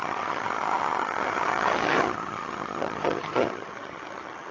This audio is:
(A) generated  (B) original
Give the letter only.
A